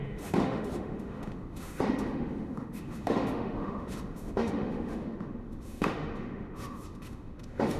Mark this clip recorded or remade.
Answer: remade